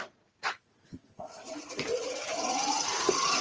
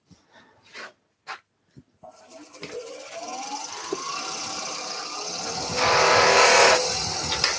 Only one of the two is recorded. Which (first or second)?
second